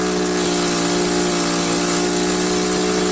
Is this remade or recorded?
recorded